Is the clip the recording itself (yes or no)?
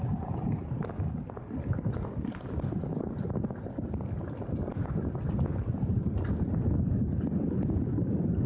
yes